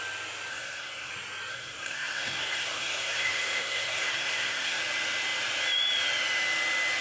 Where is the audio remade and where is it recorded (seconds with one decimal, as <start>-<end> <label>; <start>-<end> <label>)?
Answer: 0.0-0.5 recorded; 0.5-1.1 remade; 1.1-1.5 recorded; 1.5-4.8 remade; 4.8-7.0 recorded